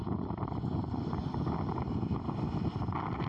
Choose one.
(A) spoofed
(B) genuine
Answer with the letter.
B